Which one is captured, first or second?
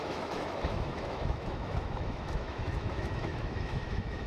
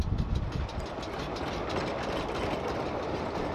second